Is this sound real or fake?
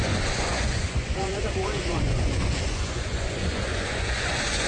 fake